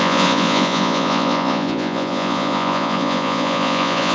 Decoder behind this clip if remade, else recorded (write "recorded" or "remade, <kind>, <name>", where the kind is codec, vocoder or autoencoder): remade, vocoder, Vocos